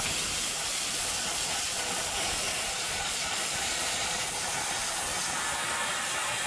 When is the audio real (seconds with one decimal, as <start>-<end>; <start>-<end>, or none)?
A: 0.0-0.7; 4.3-6.5